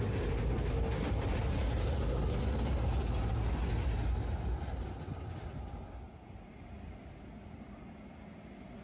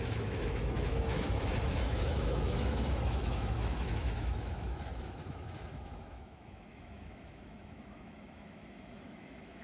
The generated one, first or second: second